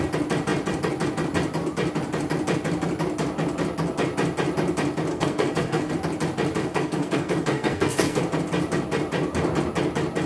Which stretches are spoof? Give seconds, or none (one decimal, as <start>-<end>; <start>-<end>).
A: 5.1-5.9; 6.6-8.2